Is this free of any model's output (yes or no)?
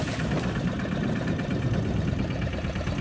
no